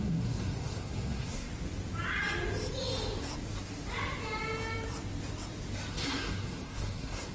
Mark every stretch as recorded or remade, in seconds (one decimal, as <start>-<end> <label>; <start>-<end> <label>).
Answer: 0.0-1.5 remade; 1.5-5.9 recorded; 5.9-7.3 remade